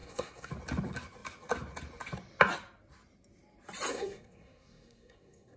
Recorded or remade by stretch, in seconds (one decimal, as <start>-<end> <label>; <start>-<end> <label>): 0.0-0.5 remade; 0.5-3.9 recorded; 3.9-5.6 remade